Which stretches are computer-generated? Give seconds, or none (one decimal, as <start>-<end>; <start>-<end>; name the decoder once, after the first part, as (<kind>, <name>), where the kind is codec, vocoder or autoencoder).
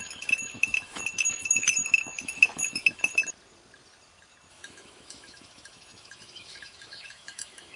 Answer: 0.0-3.2 (autoencoder, DAC-VAE); 4.5-7.8